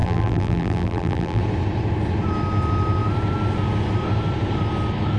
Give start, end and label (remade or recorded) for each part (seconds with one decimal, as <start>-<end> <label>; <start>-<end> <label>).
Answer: 0.0-1.4 remade; 1.4-5.2 recorded